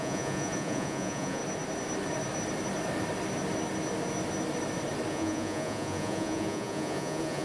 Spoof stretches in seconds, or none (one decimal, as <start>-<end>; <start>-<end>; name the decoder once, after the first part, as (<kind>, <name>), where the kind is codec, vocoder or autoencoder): 0.0-1.4 (vocoder, Vocos); 5.1-7.4